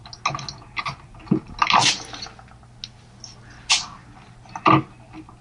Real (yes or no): yes